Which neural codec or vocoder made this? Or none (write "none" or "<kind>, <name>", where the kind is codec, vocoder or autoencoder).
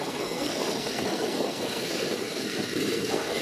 codec, SNAC